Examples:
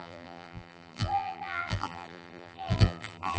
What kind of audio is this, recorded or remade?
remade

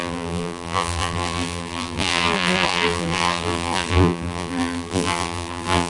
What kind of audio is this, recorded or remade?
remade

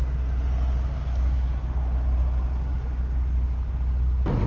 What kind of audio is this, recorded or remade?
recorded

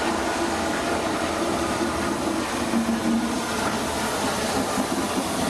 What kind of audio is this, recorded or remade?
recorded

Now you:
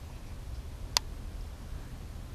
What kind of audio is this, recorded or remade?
recorded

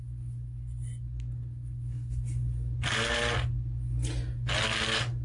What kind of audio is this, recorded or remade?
recorded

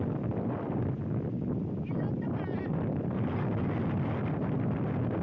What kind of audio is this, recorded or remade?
recorded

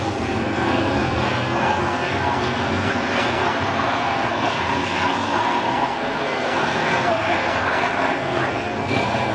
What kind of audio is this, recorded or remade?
remade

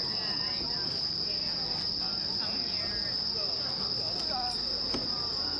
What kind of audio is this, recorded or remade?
recorded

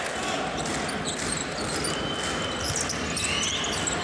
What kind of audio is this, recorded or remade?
recorded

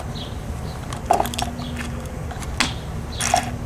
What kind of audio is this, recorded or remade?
recorded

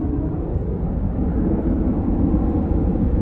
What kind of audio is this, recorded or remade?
recorded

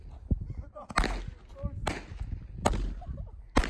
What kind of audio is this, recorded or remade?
recorded